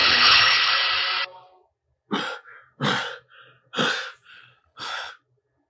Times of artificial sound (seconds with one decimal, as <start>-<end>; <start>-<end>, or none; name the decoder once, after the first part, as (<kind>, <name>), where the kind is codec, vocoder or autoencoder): 0.0-0.7 (codec, HILCodec); 4.3-5.1